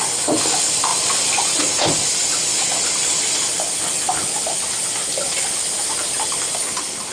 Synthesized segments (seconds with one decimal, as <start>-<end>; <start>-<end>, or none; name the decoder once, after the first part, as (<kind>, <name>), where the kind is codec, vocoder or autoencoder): 0.9-1.6 (vocoder, BigVGAN v2)